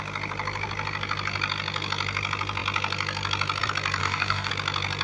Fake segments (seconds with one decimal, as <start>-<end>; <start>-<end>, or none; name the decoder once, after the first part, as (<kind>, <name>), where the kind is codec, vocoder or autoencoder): 4.0-4.5 (codec, DAC)